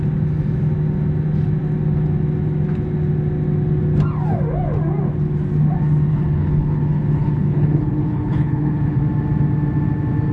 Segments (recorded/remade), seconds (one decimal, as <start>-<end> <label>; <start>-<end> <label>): 0.0-6.1 recorded; 6.1-9.0 remade; 9.0-10.3 recorded